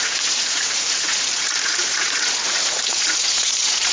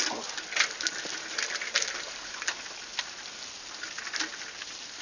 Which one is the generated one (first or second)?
first